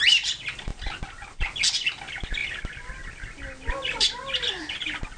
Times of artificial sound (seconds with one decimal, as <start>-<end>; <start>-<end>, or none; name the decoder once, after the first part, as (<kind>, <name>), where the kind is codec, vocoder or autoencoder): none